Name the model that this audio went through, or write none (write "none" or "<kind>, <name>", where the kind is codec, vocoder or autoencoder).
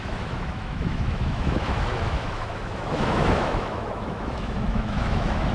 autoencoder, DAC-VAE